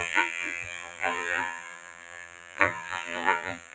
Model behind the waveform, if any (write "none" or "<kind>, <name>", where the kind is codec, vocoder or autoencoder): vocoder, BigVGAN v2